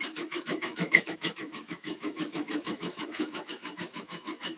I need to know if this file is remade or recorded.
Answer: remade